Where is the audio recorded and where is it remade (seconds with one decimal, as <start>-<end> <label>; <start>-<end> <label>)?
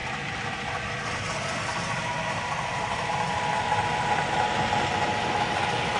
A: 0.0-3.6 remade; 3.6-6.0 recorded